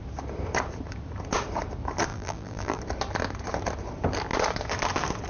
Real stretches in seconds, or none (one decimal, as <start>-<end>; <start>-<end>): 0.0-2.1; 2.8-5.3